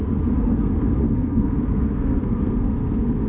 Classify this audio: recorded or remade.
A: remade